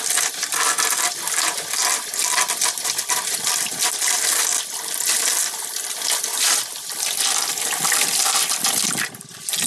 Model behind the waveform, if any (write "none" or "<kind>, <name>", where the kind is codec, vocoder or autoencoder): none